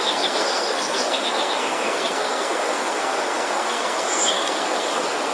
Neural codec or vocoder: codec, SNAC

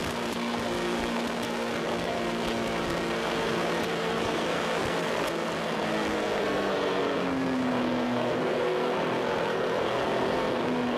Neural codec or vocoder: codec, SNAC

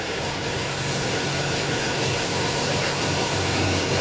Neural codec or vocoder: codec, SNAC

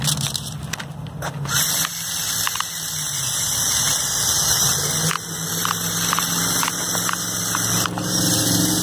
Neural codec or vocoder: none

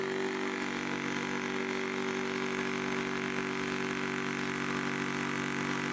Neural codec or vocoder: none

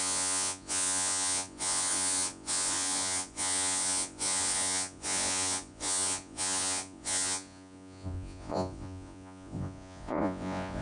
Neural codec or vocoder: vocoder, Vocos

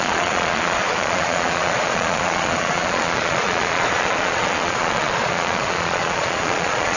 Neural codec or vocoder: vocoder, Vocos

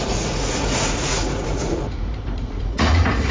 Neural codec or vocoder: vocoder, Vocos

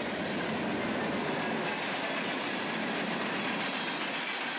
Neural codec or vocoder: none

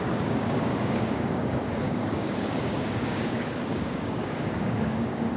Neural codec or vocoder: codec, DAC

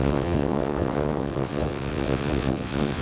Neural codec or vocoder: vocoder, WaveNeXt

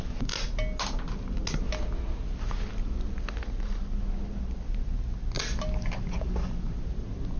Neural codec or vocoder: none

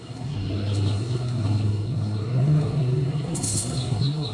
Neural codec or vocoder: codec, SNAC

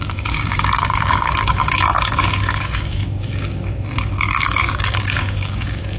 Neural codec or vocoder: codec, DAC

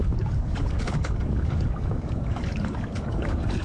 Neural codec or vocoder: codec, DAC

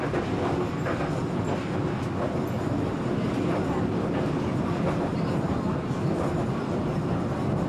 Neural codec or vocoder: none